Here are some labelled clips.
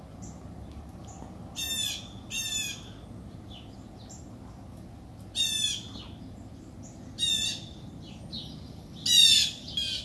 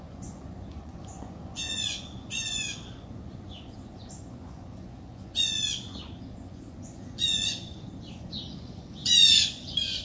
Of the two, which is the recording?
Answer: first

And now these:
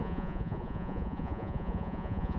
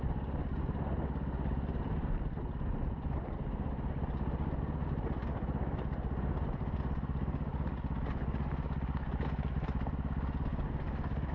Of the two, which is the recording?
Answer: second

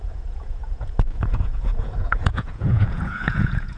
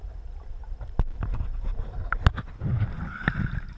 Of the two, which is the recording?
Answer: second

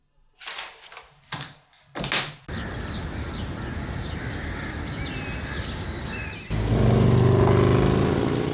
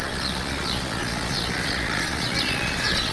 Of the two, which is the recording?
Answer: first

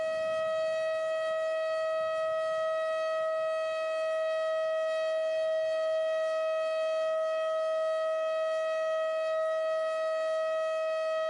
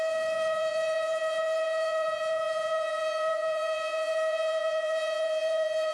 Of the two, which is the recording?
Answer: first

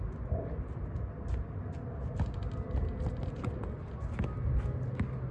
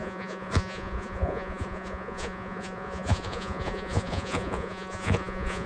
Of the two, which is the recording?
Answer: first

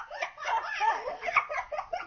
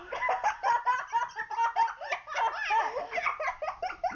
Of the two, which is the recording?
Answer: second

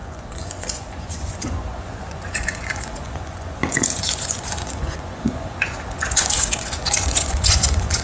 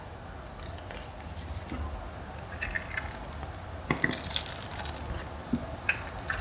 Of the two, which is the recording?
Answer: second